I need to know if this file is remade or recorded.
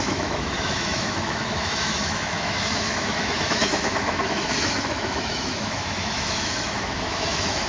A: remade